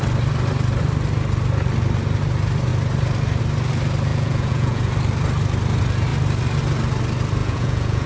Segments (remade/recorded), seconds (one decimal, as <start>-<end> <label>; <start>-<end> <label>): 0.0-4.1 recorded; 4.1-4.9 remade; 4.9-7.4 recorded; 7.4-8.1 remade